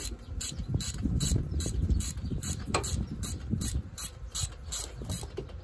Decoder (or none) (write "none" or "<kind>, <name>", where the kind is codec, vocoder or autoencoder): vocoder, BigVGAN v2